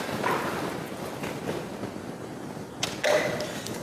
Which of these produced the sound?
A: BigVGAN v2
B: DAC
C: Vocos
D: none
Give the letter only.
A